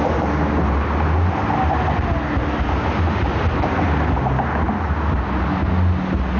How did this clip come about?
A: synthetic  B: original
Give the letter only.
B